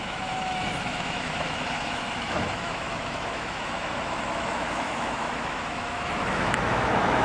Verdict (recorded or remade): remade